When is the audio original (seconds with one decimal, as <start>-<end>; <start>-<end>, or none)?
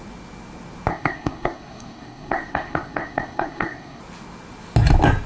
0.0-0.9; 4.0-5.3